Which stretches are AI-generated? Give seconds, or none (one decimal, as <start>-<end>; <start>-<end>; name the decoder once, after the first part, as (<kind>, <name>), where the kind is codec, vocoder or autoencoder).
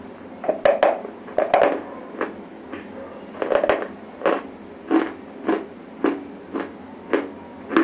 none